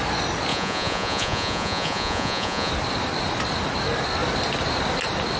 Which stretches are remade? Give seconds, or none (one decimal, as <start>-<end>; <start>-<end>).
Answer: 0.5-2.7